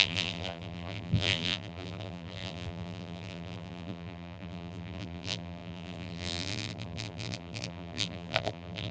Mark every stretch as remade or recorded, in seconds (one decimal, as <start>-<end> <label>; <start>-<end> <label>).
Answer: 0.0-8.9 remade